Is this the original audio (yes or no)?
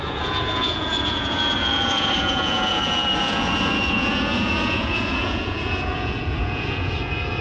no